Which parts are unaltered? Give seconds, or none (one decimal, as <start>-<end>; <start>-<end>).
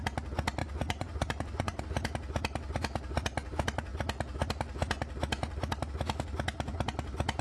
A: 0.0-0.6; 1.8-7.4